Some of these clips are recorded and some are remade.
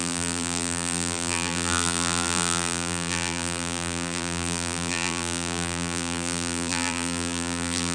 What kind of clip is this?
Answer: remade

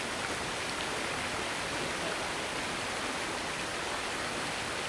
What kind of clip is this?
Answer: recorded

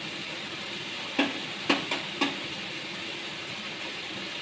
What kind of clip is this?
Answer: recorded